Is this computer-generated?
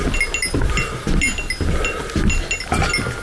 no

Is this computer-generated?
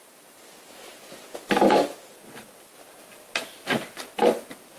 no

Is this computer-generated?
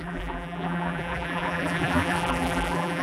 yes